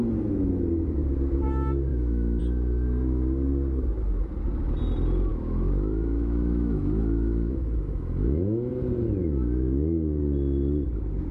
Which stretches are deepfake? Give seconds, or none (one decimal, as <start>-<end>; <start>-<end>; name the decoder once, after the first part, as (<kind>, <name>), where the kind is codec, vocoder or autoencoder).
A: 1.9-2.4 (autoencoder, DAC-VAE); 5.3-8.7; 9.2-10.2